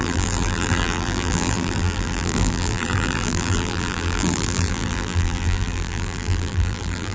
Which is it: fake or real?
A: fake